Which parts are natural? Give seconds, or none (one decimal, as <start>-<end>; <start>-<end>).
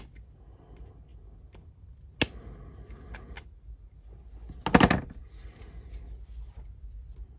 0.0-7.4